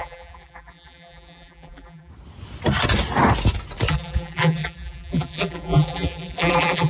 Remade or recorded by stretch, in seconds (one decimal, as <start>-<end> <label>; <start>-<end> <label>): 0.0-2.1 remade; 2.1-3.9 recorded; 3.9-6.9 remade